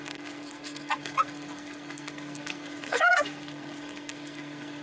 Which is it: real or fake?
fake